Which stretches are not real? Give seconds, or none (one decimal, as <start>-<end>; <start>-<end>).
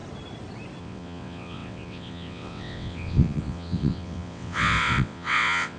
0.8-5.8